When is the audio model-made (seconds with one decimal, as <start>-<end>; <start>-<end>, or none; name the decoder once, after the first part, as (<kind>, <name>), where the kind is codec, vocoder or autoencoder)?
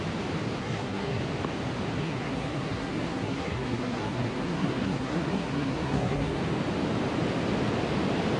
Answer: 0.6-1.2 (codec, SNAC); 2.0-6.4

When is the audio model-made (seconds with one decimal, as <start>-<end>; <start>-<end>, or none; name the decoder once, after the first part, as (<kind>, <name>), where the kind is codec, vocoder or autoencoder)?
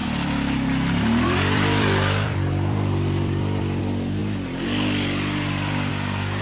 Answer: 0.0-3.8 (vocoder, BigVGAN v2)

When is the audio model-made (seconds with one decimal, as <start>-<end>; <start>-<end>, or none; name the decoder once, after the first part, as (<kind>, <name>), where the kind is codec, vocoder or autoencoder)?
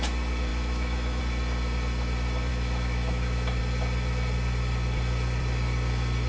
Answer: 0.5-1.2 (autoencoder, DAC-VAE); 2.5-3.6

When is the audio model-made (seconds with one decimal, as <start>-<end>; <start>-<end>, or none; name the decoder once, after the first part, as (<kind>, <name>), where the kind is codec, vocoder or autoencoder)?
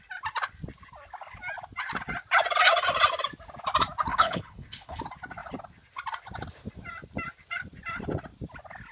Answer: 4.1-5.0 (codec, HILCodec)